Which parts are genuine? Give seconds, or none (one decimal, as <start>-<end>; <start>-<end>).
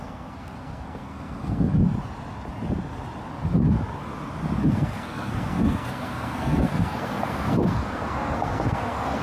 1.8-4.7